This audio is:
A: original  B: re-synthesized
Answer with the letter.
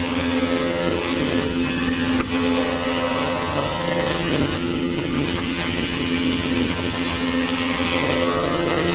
B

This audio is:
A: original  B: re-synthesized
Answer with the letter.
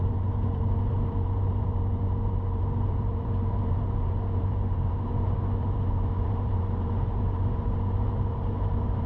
B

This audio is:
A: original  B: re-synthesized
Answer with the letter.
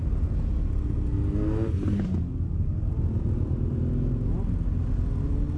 A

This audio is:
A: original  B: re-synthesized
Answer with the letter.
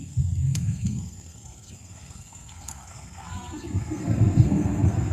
B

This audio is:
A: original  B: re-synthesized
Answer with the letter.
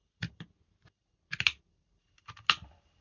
A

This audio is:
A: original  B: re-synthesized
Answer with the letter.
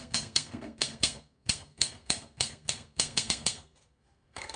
B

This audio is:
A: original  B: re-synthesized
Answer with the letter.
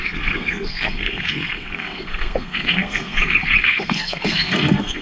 B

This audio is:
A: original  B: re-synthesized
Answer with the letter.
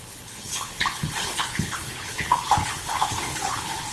B